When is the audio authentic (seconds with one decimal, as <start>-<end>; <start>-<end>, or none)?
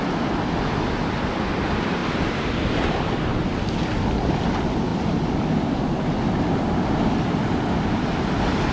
0.0-2.0; 3.0-8.7